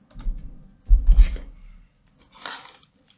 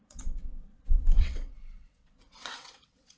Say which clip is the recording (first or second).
first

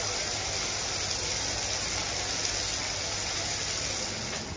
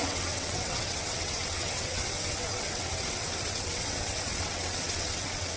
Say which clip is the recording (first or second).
first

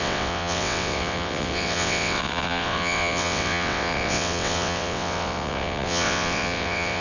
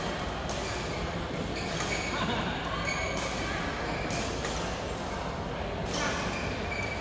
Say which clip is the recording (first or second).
second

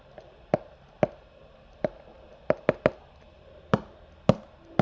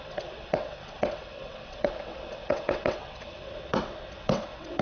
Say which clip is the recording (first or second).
first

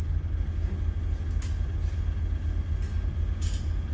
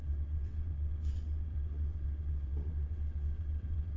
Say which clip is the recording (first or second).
first